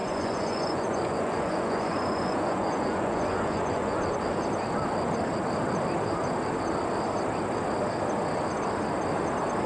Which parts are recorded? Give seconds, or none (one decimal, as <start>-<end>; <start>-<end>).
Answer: 4.0-9.7